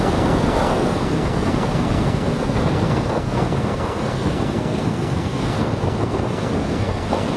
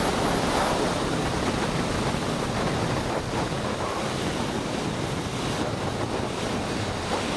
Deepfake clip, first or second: first